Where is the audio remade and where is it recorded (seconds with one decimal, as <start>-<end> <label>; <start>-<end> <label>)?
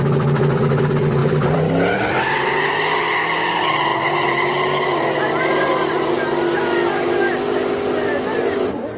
0.0-1.2 recorded; 1.2-2.7 remade; 2.7-3.9 recorded; 3.9-6.1 remade; 6.1-9.0 recorded